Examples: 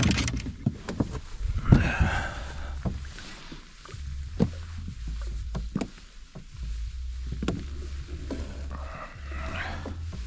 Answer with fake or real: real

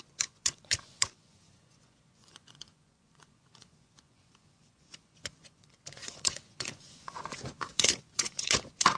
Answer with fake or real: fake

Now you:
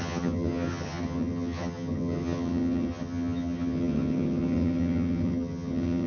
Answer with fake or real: fake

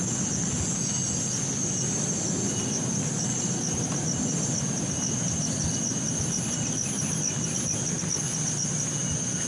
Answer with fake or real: real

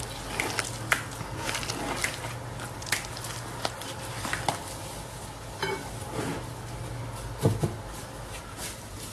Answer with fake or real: real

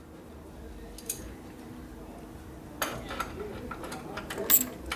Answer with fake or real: real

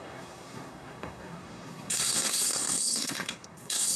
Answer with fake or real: fake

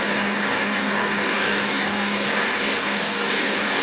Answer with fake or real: fake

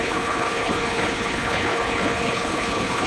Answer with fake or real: fake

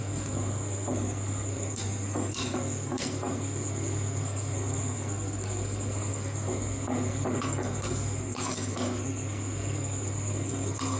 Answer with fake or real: fake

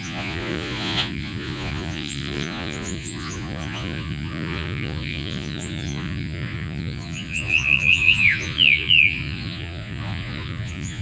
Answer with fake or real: fake